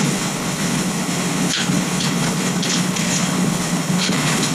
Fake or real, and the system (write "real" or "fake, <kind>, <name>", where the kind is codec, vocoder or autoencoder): fake, codec, HILCodec